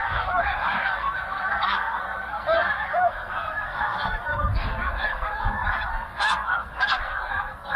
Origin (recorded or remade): remade